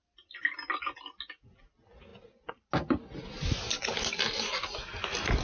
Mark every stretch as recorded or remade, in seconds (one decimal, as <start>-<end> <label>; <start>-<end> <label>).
0.0-5.4 recorded